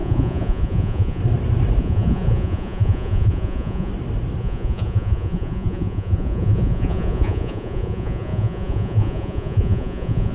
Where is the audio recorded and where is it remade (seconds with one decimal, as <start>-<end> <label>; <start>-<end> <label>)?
0.0-1.2 remade; 1.2-1.8 recorded; 1.8-3.9 remade; 3.9-4.4 recorded; 4.4-10.3 remade